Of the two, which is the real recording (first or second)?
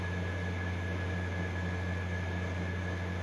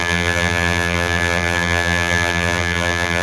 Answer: first